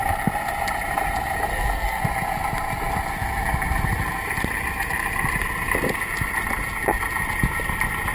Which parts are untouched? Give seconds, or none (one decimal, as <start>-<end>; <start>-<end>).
0.0-1.5; 2.0-8.1